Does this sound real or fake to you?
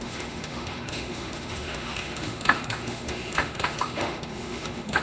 fake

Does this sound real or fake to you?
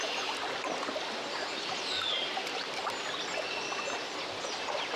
real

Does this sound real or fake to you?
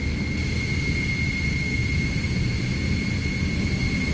real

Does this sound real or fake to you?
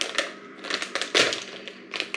real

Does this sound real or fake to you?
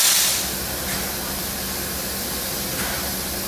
real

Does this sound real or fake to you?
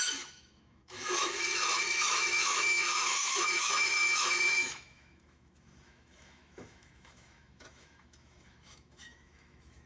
fake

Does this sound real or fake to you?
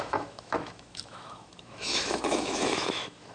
fake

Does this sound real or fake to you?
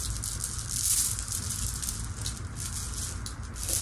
real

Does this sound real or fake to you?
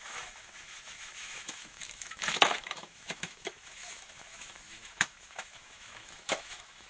fake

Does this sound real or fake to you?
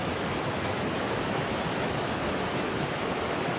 fake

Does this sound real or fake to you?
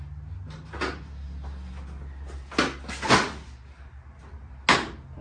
real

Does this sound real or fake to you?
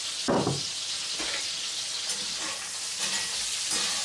real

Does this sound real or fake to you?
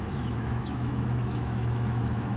fake